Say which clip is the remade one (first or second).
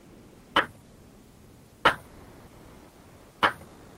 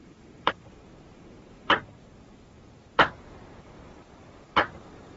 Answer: second